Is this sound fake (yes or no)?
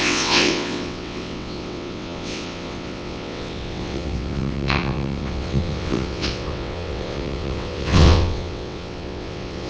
yes